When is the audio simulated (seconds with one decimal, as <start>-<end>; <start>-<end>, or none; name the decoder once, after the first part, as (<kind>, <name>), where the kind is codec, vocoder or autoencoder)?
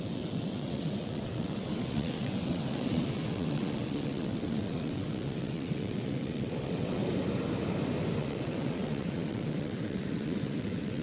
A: 0.0-7.0 (vocoder, WaveNeXt); 8.2-11.0